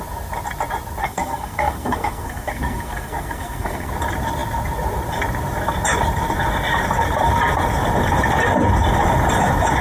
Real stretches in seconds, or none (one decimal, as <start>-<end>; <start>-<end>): 0.0-1.0; 3.9-9.8